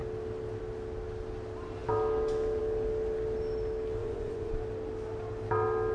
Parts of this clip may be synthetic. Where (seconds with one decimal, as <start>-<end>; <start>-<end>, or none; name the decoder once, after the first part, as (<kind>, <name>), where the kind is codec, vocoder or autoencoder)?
4.0-4.5 (vocoder, Vocos)